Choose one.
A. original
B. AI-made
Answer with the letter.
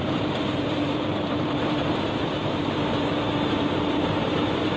B